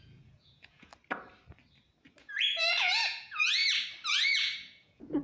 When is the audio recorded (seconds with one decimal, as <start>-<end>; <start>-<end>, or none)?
0.9-2.2; 3.6-4.1

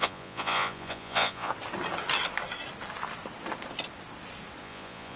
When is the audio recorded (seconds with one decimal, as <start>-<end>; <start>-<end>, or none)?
1.5-4.6

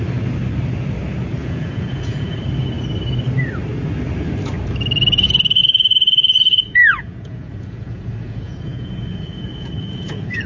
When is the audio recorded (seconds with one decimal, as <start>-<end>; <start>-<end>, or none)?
0.0-1.4; 2.4-5.6

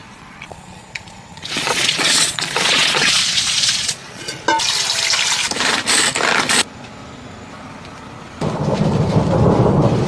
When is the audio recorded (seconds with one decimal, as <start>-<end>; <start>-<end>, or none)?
4.4-10.1

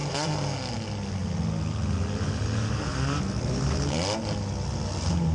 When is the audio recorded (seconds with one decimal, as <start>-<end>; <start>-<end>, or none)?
0.0-5.3

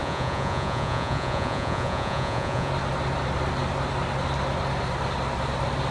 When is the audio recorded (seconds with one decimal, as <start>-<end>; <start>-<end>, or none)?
2.7-5.9

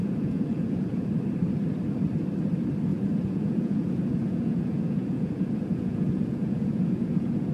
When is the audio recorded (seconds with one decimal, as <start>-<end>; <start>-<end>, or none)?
1.1-2.9